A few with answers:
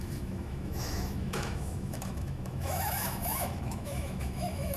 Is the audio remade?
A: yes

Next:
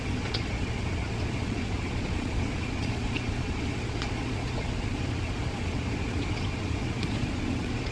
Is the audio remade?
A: yes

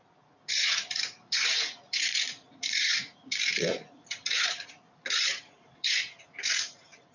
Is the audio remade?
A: yes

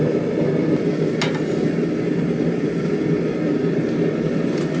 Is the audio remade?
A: no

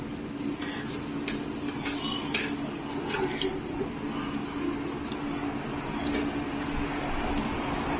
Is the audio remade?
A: no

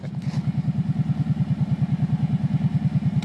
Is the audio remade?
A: no